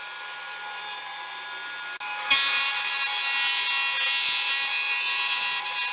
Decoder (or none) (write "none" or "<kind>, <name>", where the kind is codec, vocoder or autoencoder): none